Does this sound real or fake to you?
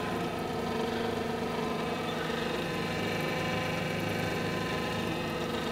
real